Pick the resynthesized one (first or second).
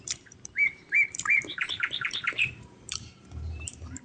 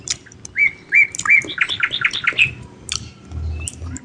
first